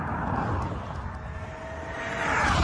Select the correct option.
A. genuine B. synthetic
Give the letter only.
A